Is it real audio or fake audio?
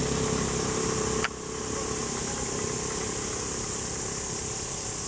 real